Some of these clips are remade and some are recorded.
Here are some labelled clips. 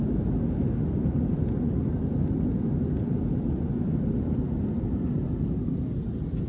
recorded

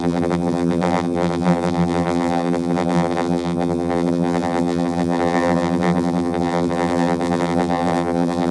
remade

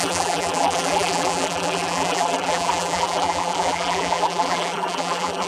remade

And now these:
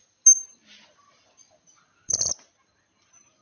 recorded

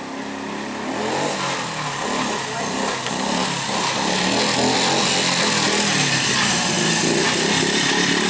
recorded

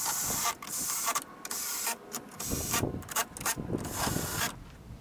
recorded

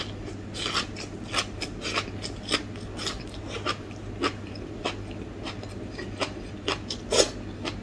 recorded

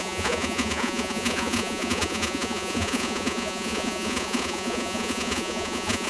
remade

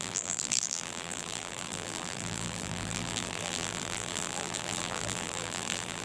remade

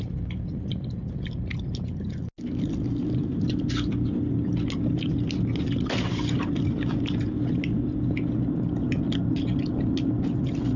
recorded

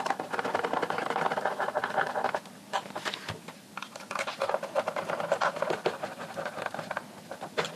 recorded